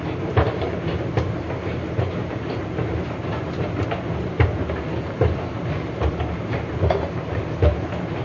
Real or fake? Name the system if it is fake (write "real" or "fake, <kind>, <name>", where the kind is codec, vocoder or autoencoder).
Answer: fake, vocoder, BigVGAN v2